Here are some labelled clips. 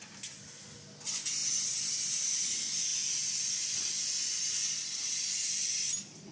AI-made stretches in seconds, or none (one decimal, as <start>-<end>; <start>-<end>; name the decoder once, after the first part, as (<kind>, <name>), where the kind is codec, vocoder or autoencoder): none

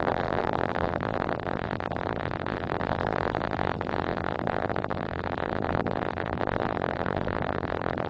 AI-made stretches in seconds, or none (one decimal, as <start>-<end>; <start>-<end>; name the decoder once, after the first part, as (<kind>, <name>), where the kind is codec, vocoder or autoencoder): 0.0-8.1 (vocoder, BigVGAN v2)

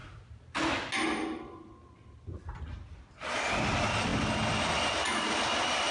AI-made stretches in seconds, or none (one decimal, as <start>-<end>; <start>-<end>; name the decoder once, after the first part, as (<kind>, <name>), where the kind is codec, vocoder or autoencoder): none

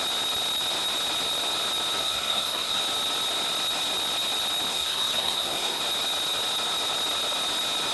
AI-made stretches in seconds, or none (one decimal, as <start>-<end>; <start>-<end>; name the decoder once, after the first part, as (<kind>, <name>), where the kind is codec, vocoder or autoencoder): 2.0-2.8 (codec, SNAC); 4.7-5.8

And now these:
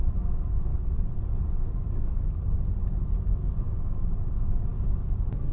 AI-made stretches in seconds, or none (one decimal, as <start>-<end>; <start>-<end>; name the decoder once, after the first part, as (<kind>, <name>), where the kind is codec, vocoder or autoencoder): 0.7-1.4 (vocoder, WaveNeXt)

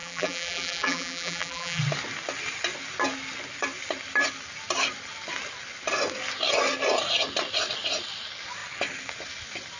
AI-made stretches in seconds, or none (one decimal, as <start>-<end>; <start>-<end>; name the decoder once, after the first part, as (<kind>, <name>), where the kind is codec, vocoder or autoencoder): 0.0-1.8 (vocoder, BigVGAN v2)